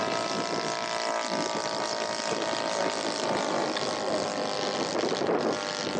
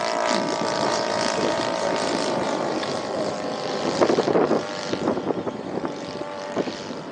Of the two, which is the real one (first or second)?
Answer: first